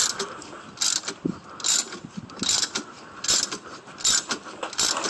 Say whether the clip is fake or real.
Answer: real